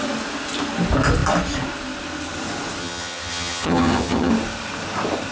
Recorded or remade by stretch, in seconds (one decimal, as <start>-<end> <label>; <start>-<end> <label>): 0.0-2.8 recorded; 2.8-4.3 remade; 4.3-5.3 recorded